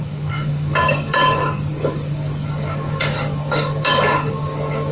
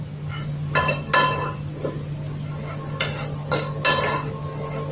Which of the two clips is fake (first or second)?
first